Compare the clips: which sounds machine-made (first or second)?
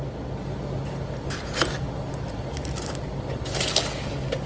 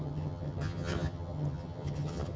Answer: second